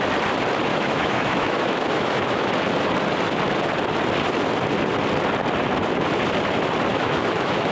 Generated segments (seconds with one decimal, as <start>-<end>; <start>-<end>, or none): 0.7-2.5; 6.9-7.7